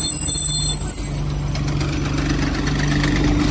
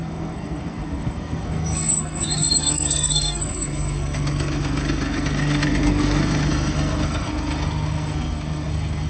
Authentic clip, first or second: first